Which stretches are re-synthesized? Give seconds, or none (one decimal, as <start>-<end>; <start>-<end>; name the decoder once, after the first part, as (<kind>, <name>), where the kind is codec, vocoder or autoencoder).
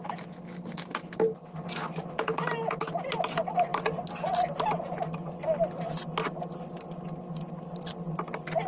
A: none